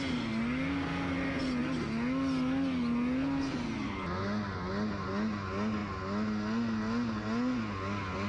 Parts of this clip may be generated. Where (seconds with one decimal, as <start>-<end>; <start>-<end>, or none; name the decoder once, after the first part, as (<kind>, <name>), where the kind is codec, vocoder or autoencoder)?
none